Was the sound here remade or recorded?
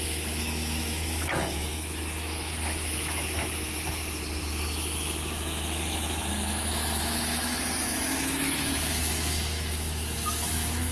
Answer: remade